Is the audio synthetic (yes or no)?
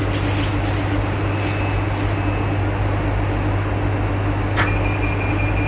no